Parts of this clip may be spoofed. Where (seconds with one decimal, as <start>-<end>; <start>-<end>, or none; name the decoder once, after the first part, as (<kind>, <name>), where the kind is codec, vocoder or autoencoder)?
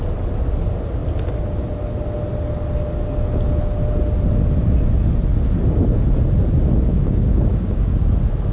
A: 6.9-8.0 (codec, DAC)